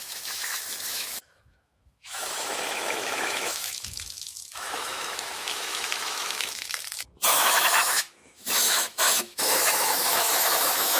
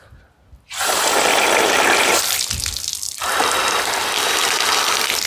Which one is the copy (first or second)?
first